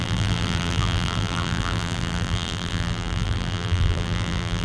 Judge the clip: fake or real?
fake